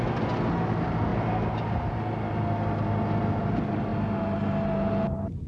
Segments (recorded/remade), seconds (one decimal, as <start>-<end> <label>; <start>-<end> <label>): 0.0-1.1 recorded; 1.1-1.9 remade; 1.9-5.5 recorded